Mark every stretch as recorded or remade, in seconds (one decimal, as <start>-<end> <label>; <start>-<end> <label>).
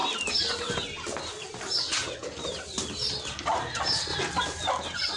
0.0-5.2 recorded